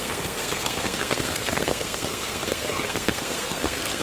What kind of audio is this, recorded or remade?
remade